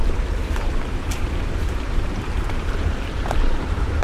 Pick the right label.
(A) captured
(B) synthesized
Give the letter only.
B